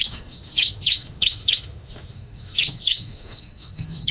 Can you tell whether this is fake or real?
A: fake